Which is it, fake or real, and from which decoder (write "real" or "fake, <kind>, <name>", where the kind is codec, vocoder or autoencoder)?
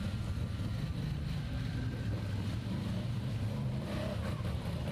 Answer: fake, vocoder, BigVGAN v2